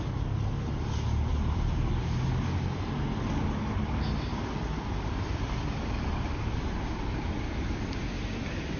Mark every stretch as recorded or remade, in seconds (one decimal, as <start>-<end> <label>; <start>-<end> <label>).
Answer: 0.0-1.3 recorded; 1.3-2.3 remade; 2.3-4.3 recorded; 4.3-6.7 remade; 6.7-8.8 recorded